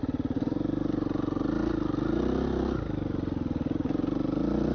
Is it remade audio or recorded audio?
recorded